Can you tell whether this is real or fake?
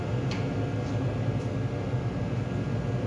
real